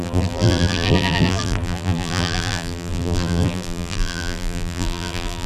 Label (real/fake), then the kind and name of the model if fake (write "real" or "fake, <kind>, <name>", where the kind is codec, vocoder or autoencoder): fake, vocoder, BigVGAN v2